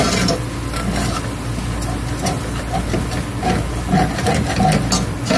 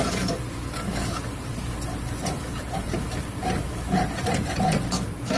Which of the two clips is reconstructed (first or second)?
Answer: second